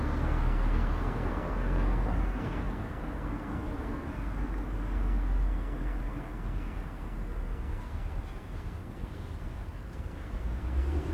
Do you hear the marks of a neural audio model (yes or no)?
yes